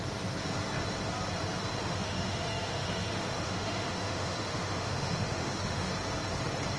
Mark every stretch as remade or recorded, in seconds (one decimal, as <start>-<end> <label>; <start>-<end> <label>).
0.0-1.8 recorded; 1.8-5.9 remade; 5.9-6.8 recorded